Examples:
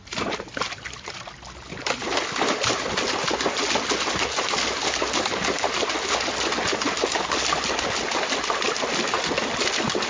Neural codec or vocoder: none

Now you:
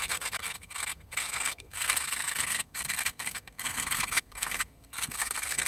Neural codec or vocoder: codec, SNAC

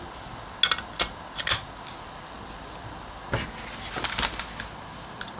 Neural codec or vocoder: none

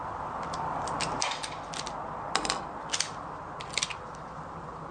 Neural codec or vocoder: none